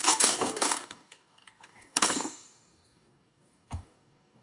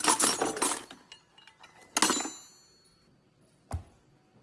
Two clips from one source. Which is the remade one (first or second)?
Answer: first